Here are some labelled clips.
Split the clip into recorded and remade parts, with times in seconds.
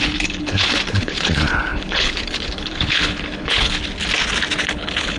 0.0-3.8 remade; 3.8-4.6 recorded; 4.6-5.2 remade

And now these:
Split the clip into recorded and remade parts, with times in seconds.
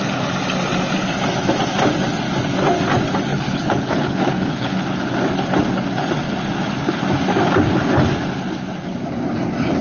0.0-3.3 recorded; 3.3-4.8 remade; 4.8-9.8 recorded